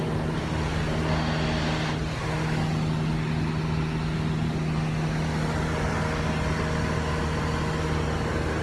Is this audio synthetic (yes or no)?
no